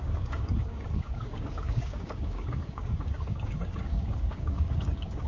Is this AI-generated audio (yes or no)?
yes